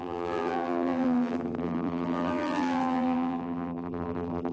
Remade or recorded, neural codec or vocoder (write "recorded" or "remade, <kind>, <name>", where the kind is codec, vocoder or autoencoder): remade, vocoder, BigVGAN v2